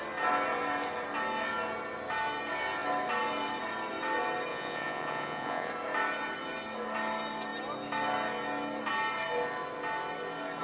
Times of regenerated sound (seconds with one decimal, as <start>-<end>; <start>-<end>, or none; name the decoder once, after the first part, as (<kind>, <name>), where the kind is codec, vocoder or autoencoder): 4.5-5.7 (vocoder, Vocos)